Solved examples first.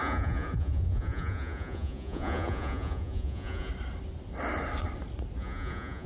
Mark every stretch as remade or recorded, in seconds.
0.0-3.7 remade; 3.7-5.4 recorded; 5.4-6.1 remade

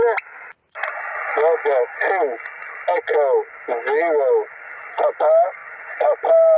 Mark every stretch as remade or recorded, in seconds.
0.0-5.6 recorded; 5.6-6.6 remade

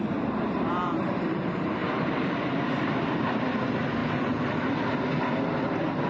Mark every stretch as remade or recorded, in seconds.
0.0-4.0 remade; 4.0-6.1 recorded

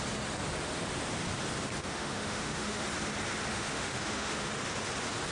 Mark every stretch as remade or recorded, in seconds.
0.0-1.8 recorded; 1.8-2.8 remade; 2.8-3.5 recorded; 3.5-4.5 remade; 4.5-5.3 recorded